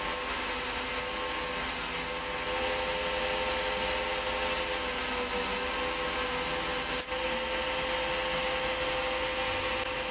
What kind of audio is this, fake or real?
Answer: real